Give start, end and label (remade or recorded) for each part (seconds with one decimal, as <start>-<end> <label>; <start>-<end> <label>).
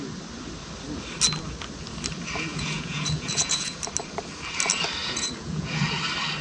0.0-2.5 recorded; 2.5-3.8 remade; 3.8-5.0 recorded; 5.0-5.8 remade; 5.8-6.4 recorded